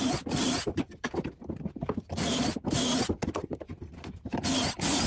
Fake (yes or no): yes